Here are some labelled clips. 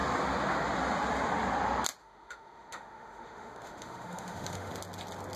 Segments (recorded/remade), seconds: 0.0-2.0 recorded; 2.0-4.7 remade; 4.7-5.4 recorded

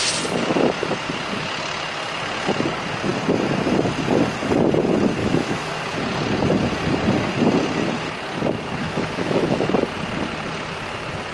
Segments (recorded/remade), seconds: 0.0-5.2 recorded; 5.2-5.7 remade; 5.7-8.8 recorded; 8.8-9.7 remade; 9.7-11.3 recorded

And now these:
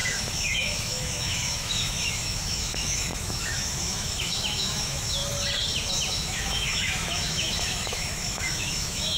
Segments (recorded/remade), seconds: 0.0-5.2 remade; 5.2-6.1 recorded; 6.1-9.2 remade

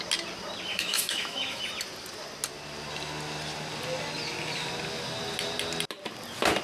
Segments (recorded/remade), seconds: 0.0-0.7 recorded; 0.7-1.6 remade; 1.6-6.6 recorded

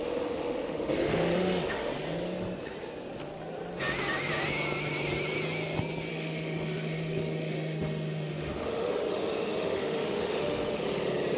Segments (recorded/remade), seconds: 0.0-1.9 remade; 1.9-6.1 recorded; 6.1-10.8 remade; 10.8-11.4 recorded

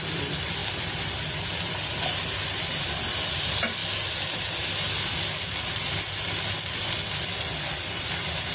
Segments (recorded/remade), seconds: 0.0-8.5 recorded

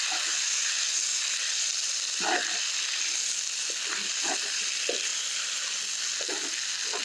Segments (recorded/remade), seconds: 0.0-7.0 recorded

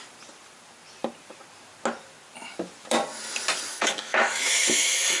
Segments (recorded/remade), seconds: 0.0-3.7 recorded; 3.7-5.2 remade